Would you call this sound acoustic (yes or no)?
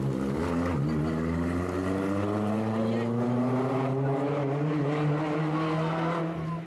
yes